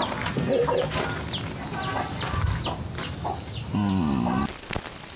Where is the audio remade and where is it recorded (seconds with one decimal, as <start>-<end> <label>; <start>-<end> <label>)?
0.0-5.2 recorded